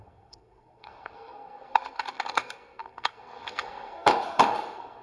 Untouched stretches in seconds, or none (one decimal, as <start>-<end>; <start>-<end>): none